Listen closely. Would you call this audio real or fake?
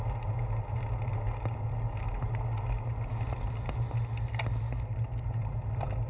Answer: real